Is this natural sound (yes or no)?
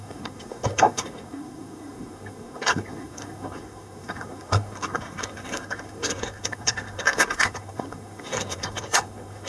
no